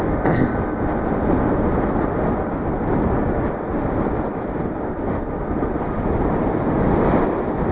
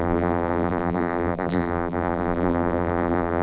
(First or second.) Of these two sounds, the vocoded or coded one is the second